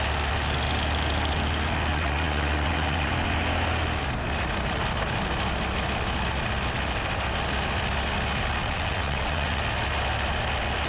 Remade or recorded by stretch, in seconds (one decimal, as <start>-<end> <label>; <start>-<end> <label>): 0.0-1.9 recorded; 1.9-3.1 remade; 3.1-8.6 recorded; 8.6-9.6 remade; 9.6-10.9 recorded